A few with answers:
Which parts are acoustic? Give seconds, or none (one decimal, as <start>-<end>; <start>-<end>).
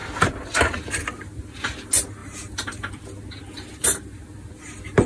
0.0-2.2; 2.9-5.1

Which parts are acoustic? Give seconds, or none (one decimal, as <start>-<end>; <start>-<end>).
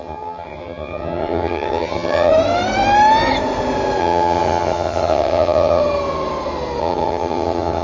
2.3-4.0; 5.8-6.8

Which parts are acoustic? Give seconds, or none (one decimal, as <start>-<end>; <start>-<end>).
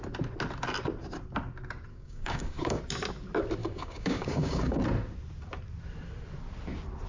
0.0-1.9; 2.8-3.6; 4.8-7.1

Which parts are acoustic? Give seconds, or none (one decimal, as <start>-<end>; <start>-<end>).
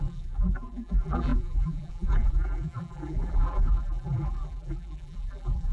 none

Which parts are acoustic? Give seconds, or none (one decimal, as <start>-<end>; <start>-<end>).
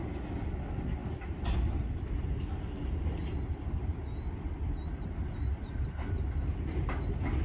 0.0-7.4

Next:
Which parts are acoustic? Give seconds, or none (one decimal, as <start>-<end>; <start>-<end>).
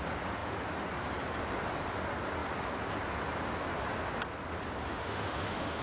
0.0-4.9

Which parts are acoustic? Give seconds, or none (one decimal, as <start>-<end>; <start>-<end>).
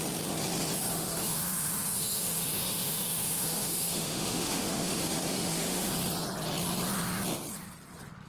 0.0-0.9; 5.9-8.3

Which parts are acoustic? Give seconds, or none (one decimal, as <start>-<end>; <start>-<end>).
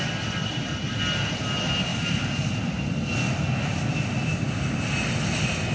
0.0-0.4; 1.0-1.9; 2.4-5.7